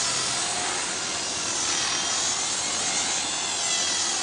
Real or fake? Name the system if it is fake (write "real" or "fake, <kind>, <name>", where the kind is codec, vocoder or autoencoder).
real